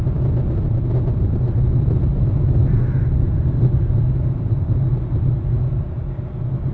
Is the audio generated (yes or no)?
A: no